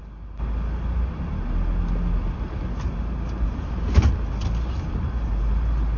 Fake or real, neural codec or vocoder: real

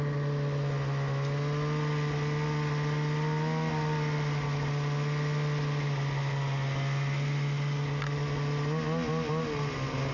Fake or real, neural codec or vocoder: real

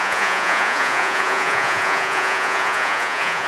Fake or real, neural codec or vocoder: fake, vocoder, Vocos